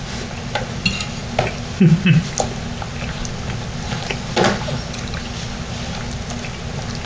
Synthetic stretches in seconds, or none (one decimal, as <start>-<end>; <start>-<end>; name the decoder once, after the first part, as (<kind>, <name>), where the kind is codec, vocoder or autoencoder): none